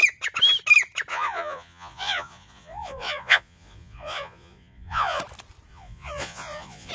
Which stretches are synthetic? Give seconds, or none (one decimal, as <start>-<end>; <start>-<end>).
1.1-5.2; 5.7-6.9